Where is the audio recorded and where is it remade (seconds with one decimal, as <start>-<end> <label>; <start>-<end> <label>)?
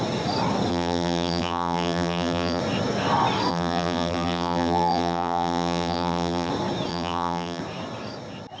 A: 0.0-0.7 recorded; 0.7-2.6 remade; 2.6-3.5 recorded; 3.5-6.5 remade; 6.5-6.9 recorded; 6.9-7.6 remade; 7.6-8.6 recorded